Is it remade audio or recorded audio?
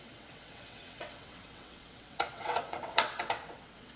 remade